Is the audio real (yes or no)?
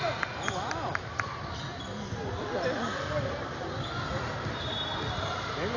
yes